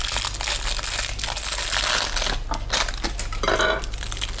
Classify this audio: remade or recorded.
recorded